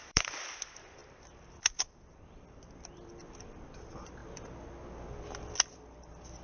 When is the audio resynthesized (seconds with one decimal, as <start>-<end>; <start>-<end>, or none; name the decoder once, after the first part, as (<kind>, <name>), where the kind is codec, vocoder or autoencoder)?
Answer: 0.0-4.2 (vocoder, BigVGAN v2); 5.4-6.4